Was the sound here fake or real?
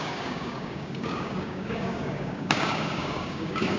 fake